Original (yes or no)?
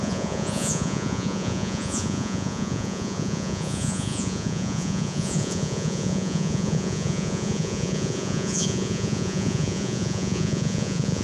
no